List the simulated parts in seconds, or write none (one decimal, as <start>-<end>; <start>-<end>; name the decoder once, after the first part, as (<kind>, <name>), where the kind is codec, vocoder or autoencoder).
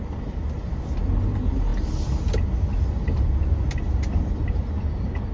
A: none